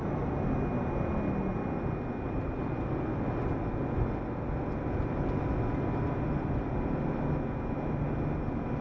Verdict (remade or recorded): recorded